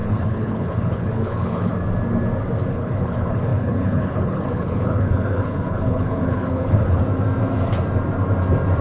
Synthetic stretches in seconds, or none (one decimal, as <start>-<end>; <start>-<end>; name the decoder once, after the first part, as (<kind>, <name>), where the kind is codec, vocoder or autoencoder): 0.0-1.7 (codec, HILCodec); 2.7-7.0